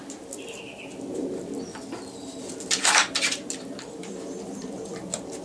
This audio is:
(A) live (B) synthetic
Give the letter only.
B